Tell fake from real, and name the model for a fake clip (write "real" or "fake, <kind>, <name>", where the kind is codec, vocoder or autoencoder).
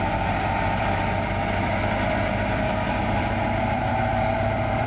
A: fake, vocoder, BigVGAN v2